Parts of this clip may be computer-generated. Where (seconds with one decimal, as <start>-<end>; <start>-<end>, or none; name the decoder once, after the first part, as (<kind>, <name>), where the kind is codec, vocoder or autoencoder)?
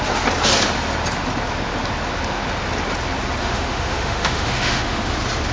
3.4-5.1 (autoencoder, DAC-VAE)